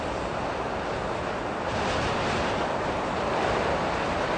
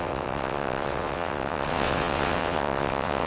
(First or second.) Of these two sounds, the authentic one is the first